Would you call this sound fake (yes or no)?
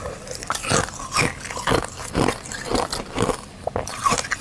no